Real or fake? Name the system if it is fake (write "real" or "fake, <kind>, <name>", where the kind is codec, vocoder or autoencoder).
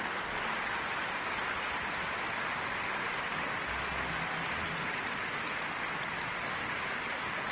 real